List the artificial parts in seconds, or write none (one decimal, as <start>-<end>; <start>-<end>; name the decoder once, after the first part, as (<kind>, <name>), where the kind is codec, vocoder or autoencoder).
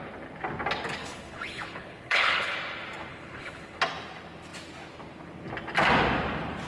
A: 1.0-2.5 (codec, HILCodec); 3.1-3.8